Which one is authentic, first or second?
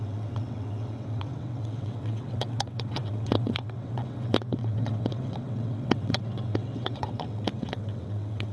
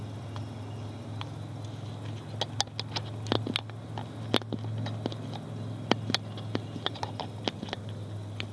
second